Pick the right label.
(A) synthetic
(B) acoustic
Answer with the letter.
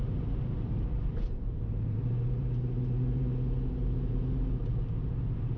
A